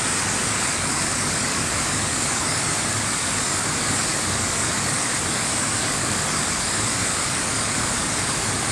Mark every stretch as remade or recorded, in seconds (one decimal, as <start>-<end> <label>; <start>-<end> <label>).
0.0-8.7 remade